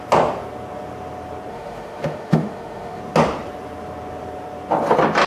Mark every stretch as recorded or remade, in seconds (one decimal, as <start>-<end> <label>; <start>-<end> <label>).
0.0-1.5 recorded; 1.5-3.0 remade; 3.0-5.3 recorded